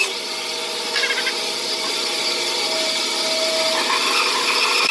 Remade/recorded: recorded